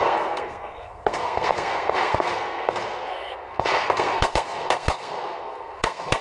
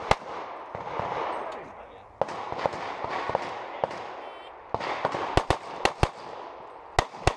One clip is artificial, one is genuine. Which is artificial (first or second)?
first